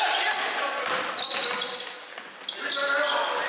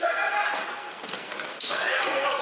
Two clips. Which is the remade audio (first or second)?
second